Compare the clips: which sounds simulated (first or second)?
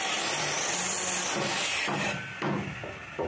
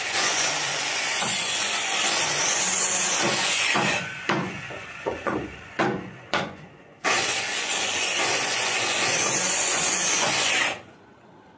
second